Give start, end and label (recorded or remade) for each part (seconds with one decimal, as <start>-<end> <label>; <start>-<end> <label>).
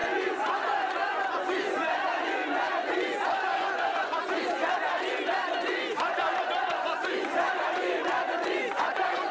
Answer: 0.0-9.3 remade